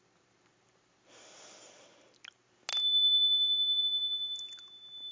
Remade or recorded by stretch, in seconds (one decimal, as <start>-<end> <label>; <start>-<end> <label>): 0.0-5.1 recorded